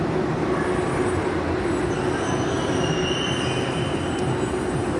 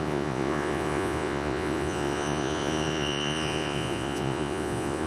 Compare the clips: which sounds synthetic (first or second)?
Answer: second